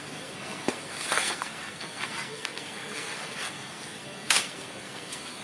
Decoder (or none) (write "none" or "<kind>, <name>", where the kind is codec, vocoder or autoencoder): codec, SNAC